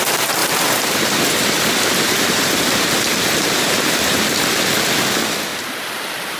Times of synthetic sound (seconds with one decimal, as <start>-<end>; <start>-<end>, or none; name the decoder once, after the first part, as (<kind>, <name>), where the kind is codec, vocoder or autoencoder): 0.4-4.2 (vocoder, BigVGAN v2)